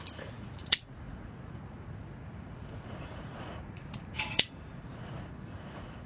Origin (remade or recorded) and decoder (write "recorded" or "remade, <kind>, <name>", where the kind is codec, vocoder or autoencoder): remade, vocoder, Vocos